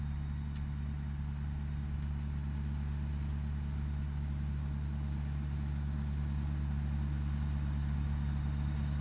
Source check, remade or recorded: recorded